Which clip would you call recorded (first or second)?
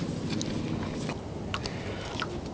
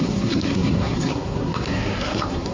first